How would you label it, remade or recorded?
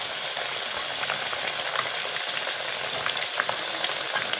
recorded